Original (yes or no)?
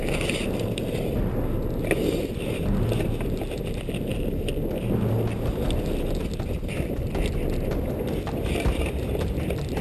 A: yes